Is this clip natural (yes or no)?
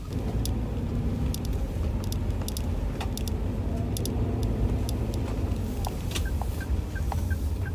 yes